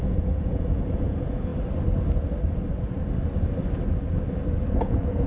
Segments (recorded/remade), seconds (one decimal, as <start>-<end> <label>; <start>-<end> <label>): 0.0-1.5 remade; 1.5-4.7 recorded; 4.7-5.3 remade